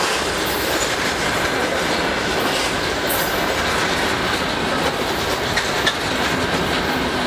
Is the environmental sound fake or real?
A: real